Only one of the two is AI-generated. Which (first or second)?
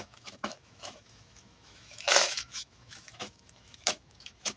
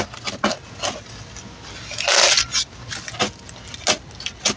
first